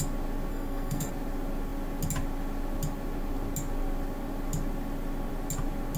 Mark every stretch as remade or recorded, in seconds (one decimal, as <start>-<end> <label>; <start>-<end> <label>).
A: 0.0-0.5 recorded; 0.5-1.1 remade; 1.1-6.0 recorded